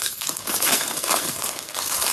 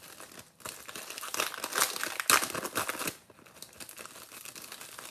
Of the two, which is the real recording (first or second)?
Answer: second